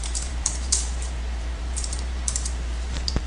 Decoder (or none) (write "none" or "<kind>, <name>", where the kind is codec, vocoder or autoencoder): vocoder, BigVGAN v2